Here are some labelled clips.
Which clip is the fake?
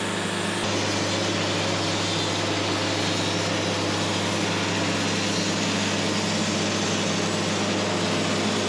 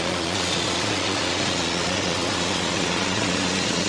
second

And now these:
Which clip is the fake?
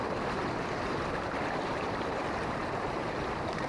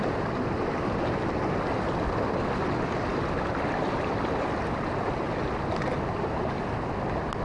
first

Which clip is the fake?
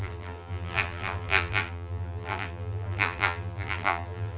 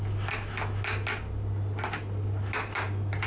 first